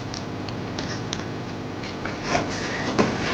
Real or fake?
real